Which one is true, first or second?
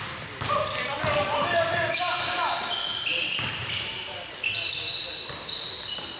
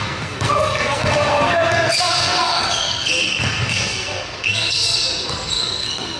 first